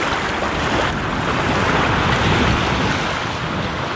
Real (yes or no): yes